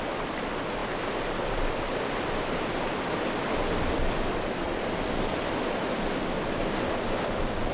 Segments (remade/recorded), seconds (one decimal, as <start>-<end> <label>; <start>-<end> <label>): 0.0-7.7 recorded